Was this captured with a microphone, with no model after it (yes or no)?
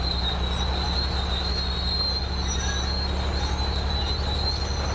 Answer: yes